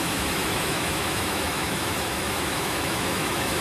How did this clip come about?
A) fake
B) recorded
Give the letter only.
A